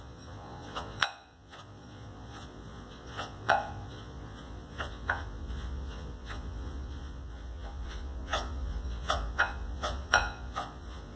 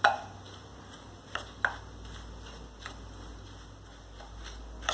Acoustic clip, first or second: second